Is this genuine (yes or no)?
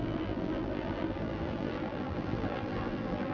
no